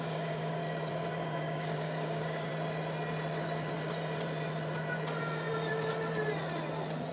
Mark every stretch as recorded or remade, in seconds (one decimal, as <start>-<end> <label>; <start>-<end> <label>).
0.0-0.6 remade; 0.6-1.4 recorded; 1.4-2.5 remade; 2.5-7.1 recorded